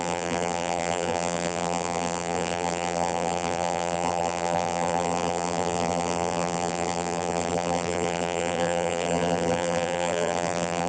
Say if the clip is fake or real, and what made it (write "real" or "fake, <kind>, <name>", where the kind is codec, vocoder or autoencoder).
fake, vocoder, BigVGAN v2